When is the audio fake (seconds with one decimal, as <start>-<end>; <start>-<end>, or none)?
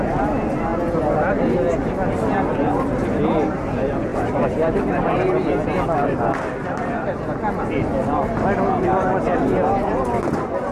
4.1-5.0